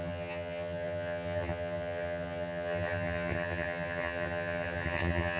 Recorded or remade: remade